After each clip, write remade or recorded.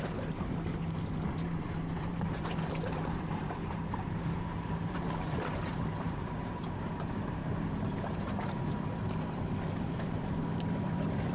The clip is remade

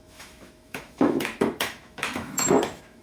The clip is remade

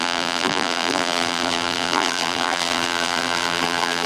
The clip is remade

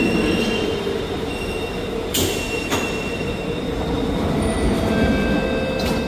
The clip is recorded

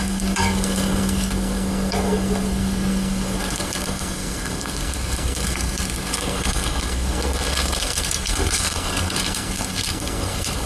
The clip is remade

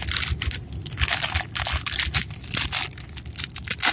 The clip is recorded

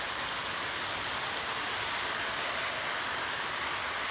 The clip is recorded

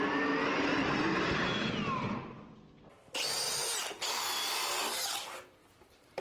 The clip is recorded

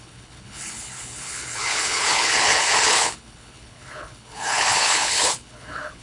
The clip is remade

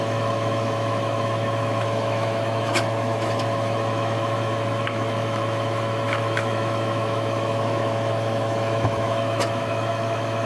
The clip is remade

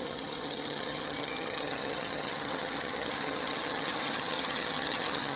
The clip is remade